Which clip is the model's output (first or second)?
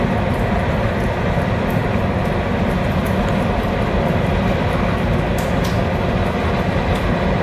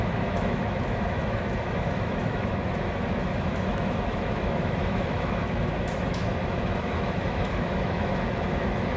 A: second